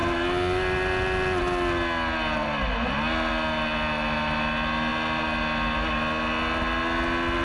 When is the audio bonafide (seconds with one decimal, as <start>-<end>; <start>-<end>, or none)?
0.0-7.4